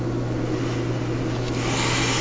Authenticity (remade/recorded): recorded